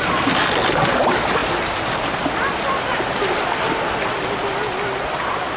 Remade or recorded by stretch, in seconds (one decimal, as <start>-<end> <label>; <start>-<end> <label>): 0.0-5.6 recorded